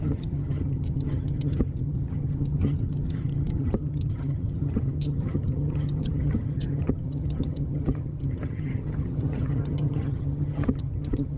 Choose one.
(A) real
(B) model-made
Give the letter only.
B